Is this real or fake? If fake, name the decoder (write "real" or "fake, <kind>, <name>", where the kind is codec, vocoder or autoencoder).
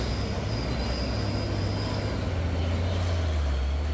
real